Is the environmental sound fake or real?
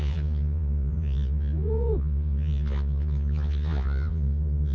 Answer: fake